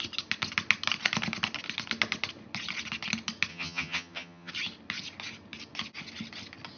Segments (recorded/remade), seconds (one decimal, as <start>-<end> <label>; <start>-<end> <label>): 0.0-3.5 recorded; 3.5-4.5 remade; 4.5-6.8 recorded